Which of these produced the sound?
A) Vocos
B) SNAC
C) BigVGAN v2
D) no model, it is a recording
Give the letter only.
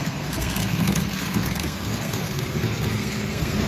B